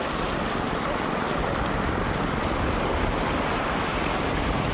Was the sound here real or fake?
real